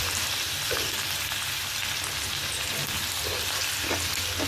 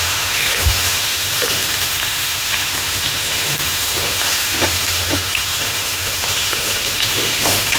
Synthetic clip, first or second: second